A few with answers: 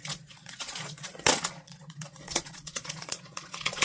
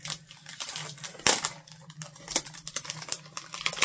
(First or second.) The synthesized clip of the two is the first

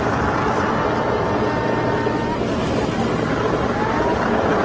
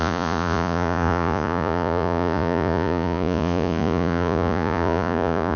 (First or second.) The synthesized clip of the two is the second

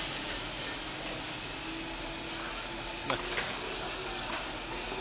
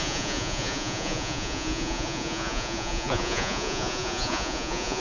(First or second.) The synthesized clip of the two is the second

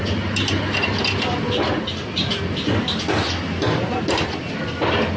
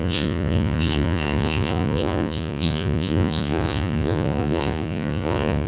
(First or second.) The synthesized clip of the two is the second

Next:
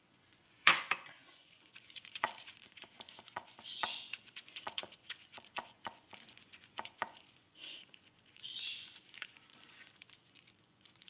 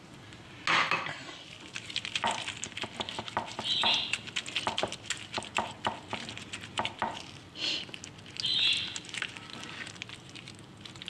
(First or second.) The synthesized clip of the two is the first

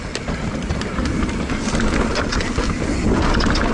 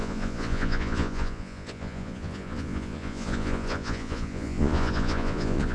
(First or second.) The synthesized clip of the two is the second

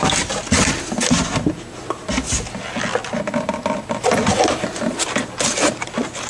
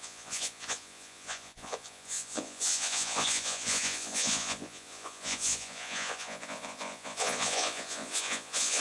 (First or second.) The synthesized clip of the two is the second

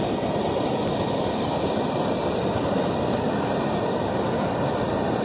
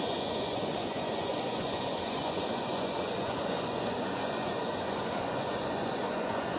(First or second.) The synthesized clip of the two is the second